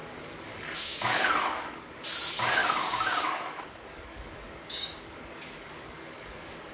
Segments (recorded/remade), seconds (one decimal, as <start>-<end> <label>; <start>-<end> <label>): 0.0-1.9 remade; 1.9-2.6 recorded; 2.6-6.7 remade